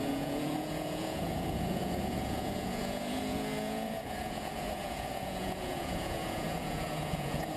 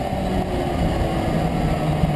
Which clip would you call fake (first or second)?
first